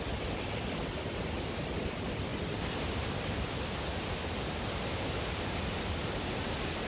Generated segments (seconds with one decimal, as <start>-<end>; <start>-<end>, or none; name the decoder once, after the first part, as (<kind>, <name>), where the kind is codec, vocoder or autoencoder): none